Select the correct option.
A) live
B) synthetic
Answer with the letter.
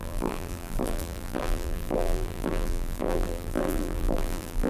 B